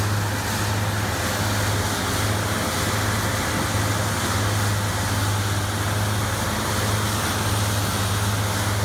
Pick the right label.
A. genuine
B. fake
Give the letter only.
A